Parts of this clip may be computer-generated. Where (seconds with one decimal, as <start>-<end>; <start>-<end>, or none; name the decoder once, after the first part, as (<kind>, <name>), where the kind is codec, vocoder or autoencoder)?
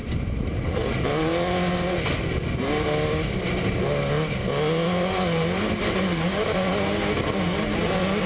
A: none